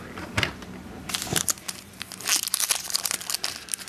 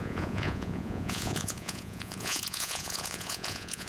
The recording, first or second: first